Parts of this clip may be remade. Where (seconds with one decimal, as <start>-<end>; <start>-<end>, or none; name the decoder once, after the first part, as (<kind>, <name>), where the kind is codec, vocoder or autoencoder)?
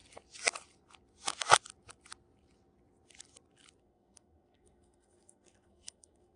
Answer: 3.8-6.4 (codec, SNAC)